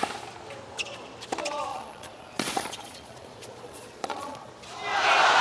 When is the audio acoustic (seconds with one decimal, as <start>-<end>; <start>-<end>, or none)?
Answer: 0.0-1.7; 4.5-5.4